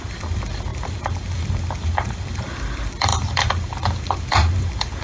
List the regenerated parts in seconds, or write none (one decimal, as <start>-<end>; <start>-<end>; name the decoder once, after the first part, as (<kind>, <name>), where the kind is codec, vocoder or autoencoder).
0.0-5.0 (vocoder, BigVGAN v2)